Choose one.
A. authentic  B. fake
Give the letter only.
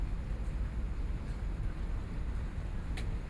A